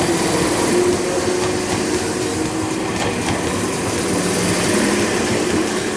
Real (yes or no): yes